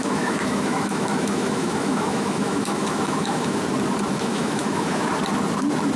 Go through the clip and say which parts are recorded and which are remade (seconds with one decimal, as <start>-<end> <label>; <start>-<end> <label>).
0.0-3.6 remade; 3.6-4.1 recorded; 4.1-5.1 remade; 5.1-6.0 recorded